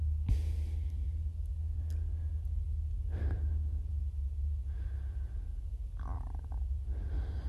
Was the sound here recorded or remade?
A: recorded